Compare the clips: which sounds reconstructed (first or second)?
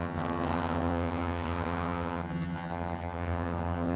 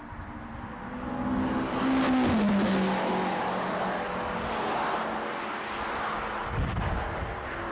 first